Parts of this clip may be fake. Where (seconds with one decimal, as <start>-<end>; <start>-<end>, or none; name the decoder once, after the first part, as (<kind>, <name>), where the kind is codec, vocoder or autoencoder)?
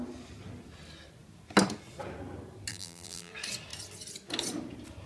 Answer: 2.7-3.3 (vocoder, BigVGAN v2)